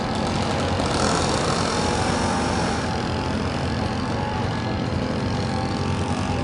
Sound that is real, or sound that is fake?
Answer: real